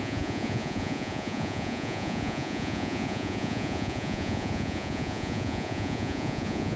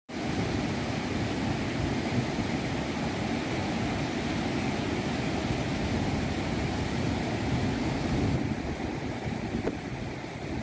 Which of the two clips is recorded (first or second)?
second